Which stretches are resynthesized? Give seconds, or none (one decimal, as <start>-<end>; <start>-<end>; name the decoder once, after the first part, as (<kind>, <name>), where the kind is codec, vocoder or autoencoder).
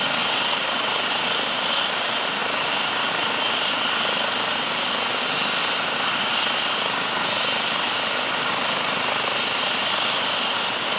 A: none